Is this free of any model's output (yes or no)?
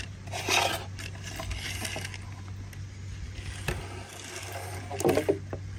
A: yes